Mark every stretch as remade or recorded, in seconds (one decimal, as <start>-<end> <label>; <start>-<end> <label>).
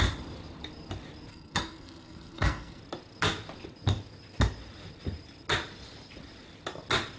0.0-1.3 recorded; 1.3-2.8 remade; 2.8-7.2 recorded